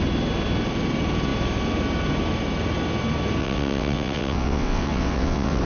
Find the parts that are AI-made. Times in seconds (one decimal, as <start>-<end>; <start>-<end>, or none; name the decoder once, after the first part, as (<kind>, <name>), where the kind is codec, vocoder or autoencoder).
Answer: 3.4-5.6 (vocoder, WaveNeXt)